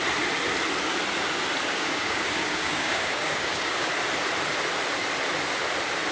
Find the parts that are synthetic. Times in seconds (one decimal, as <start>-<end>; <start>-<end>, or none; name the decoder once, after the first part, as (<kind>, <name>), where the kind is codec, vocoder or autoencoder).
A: 1.6-3.9 (codec, DAC)